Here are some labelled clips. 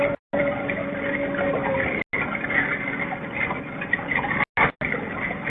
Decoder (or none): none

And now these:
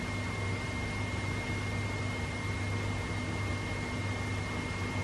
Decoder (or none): vocoder, BigVGAN v2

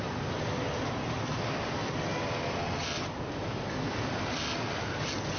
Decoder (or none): none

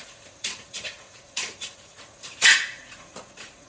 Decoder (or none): vocoder, Vocos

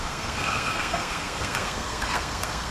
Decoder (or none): codec, SNAC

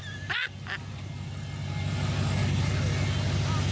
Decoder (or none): none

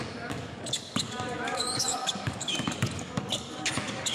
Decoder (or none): codec, DAC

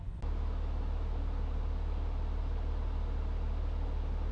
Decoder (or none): none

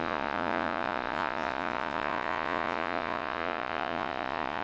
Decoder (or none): vocoder, Vocos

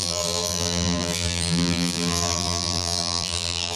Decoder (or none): vocoder, BigVGAN v2